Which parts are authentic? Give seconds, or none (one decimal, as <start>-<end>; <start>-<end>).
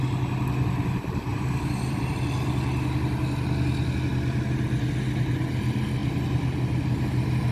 0.0-1.3; 2.1-7.5